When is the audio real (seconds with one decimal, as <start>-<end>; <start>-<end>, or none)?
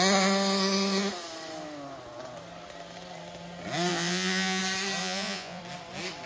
0.0-3.9; 4.6-5.0; 5.6-6.3